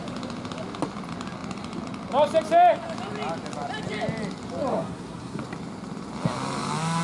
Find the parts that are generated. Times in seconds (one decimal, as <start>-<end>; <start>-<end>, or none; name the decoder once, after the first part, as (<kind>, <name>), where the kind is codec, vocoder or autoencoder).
4.7-5.4 (codec, SNAC)

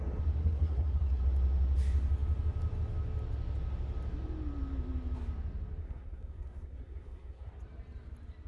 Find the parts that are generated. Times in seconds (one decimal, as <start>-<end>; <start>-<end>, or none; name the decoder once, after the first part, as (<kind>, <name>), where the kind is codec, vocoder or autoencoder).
0.4-1.2 (codec, SNAC); 5.8-7.5

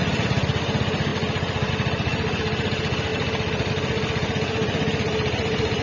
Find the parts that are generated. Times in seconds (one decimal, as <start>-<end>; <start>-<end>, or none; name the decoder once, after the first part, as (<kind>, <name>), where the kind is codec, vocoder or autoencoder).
none